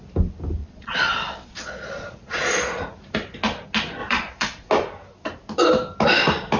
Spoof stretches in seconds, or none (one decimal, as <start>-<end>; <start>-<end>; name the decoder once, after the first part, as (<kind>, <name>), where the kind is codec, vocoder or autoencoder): 0.6-2.8 (vocoder, Vocos); 4.0-4.7